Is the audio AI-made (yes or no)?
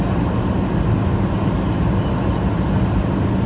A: no